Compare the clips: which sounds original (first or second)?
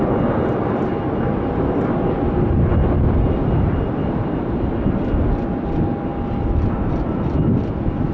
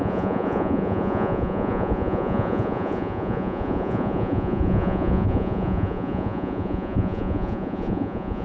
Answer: first